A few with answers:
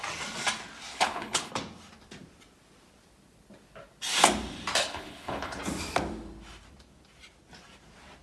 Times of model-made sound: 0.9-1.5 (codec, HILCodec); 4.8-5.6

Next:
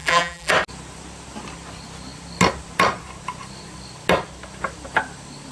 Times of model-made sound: 0.0-0.5 (vocoder, BigVGAN v2)

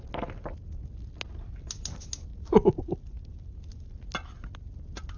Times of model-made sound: none